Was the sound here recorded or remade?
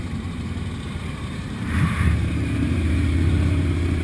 remade